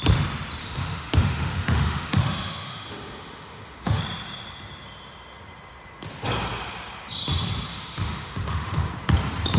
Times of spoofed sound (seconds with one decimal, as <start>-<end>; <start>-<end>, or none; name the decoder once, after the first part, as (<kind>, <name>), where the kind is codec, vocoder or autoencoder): 0.6-4.0 (autoencoder, DAC-VAE); 7.7-8.9